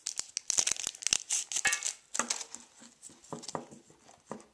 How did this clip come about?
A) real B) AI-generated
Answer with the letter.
A